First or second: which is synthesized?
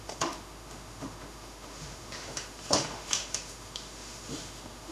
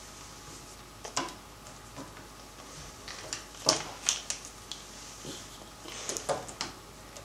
first